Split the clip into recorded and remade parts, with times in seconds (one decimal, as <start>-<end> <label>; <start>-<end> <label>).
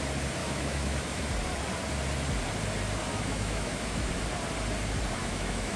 0.0-0.4 recorded; 0.4-1.3 remade; 1.3-3.1 recorded; 3.1-4.1 remade; 4.1-5.2 recorded; 5.2-5.8 remade